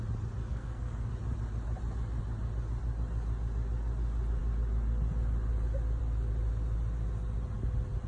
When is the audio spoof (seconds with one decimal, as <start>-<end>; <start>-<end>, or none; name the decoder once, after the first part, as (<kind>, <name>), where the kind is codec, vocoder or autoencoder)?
0.5-1.1 (codec, SNAC)